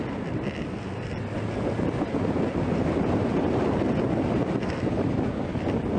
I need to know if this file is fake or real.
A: real